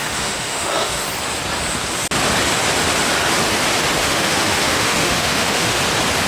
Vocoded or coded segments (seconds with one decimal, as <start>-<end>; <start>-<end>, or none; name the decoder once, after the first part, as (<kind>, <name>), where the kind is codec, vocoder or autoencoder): 0.0-1.1 (autoencoder, DAC-VAE); 4.0-5.8